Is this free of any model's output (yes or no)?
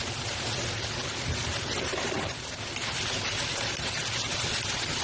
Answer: yes